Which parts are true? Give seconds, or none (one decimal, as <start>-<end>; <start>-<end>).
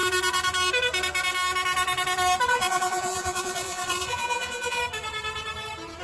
0.0-2.5; 4.8-6.0